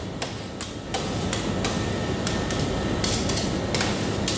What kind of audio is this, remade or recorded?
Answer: recorded